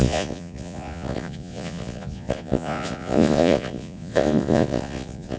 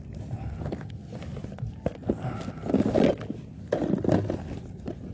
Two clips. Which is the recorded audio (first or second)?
second